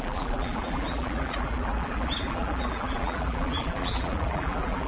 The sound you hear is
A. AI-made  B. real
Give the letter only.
A